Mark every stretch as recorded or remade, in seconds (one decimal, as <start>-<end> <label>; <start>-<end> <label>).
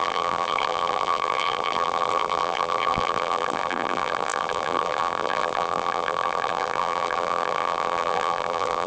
0.0-8.9 remade